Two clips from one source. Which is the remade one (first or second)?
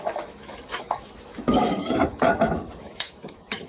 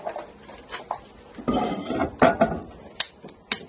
first